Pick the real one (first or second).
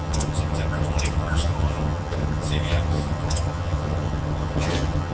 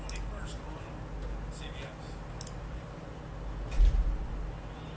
second